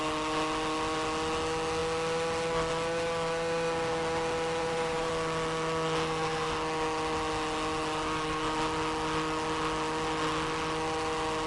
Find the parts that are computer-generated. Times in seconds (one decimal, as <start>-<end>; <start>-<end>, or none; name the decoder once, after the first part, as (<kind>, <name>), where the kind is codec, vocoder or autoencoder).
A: 4.6-5.1 (vocoder, BigVGAN v2)

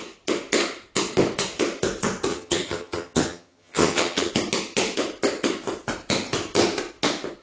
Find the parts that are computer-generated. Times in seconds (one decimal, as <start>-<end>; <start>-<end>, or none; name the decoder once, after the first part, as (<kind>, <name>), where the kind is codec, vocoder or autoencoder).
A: 2.3-4.3 (vocoder, HiFi-GAN)

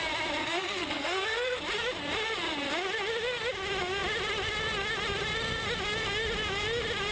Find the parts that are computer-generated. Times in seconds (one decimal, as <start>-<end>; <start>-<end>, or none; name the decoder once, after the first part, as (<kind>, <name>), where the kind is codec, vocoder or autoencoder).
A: 0.4-1.6 (codec, SNAC)

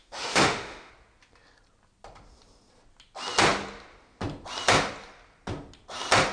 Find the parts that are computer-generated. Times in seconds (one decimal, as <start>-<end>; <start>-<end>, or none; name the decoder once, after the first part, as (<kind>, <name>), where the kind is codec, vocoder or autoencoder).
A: 0.0-0.9 (autoencoder, DAC-VAE)

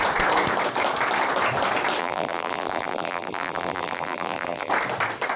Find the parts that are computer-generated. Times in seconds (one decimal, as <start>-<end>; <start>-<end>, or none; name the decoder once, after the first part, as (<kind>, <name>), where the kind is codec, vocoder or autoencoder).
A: 2.0-4.7 (vocoder, BigVGAN v2)

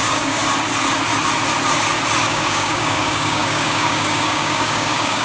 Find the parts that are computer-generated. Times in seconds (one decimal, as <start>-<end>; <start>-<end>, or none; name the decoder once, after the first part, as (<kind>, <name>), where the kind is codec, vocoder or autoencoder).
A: 0.0-0.4 (codec, DAC); 2.2-5.2

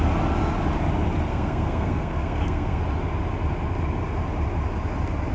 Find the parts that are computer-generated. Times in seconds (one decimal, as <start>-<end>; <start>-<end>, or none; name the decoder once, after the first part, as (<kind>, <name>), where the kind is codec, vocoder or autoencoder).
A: 1.3-2.8 (codec, SNAC)